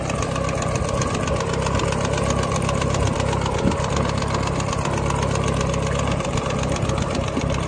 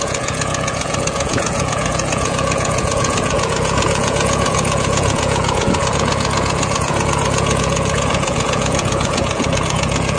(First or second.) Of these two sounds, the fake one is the second